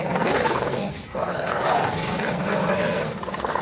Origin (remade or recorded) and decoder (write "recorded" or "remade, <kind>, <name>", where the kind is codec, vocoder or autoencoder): remade, codec, SNAC